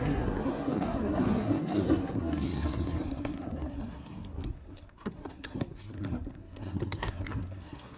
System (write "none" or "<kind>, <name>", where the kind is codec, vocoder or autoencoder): codec, SNAC